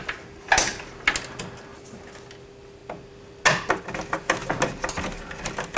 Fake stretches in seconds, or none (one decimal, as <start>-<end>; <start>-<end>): none